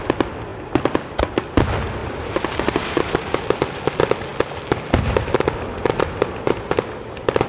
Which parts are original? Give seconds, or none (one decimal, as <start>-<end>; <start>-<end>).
0.0-2.0; 3.4-7.5